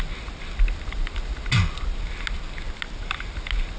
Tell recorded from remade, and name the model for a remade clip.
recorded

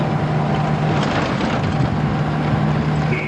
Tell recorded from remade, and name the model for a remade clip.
recorded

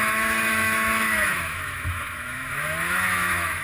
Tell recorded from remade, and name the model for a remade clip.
remade, autoencoder, DAC-VAE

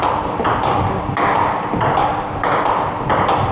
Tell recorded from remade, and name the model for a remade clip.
recorded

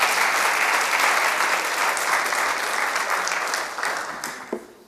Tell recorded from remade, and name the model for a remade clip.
recorded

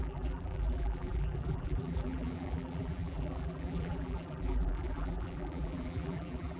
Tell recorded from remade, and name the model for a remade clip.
remade, vocoder, BigVGAN v2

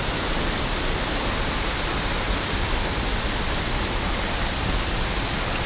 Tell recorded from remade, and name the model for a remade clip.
recorded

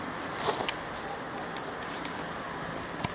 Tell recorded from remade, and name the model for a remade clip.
recorded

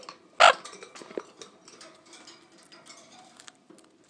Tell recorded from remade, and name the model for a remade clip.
recorded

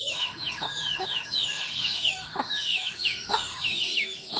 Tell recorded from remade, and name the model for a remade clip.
remade, autoencoder, DAC-VAE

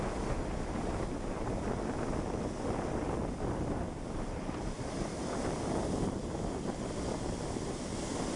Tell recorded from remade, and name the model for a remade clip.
recorded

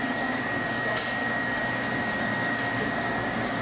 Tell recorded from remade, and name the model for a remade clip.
remade, codec, DAC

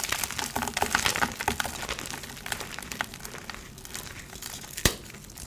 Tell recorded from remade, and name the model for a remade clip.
recorded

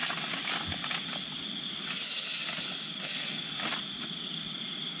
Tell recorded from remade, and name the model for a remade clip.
recorded